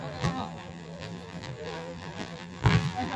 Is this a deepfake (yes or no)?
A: yes